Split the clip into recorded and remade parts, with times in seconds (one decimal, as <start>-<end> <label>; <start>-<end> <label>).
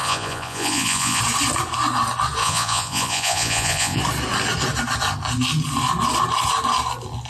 0.0-1.2 remade; 1.2-2.4 recorded; 2.4-4.0 remade; 4.0-7.3 recorded